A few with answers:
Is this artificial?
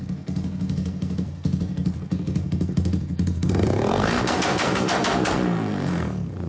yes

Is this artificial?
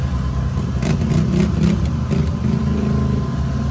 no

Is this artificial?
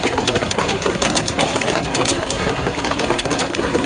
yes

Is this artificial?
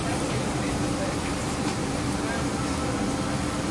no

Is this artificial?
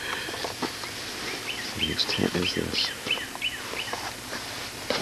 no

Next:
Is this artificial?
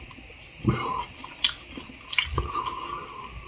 no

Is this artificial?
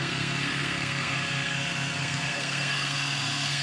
yes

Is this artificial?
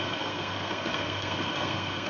yes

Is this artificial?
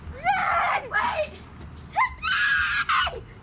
no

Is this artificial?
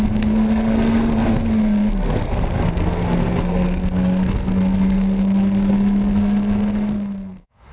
yes